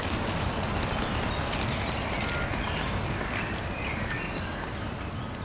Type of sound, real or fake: real